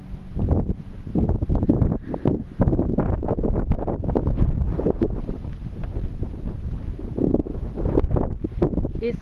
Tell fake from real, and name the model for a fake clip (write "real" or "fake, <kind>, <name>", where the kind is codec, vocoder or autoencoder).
real